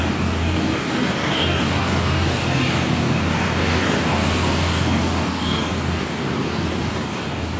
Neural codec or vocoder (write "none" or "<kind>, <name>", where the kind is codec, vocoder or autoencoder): codec, DAC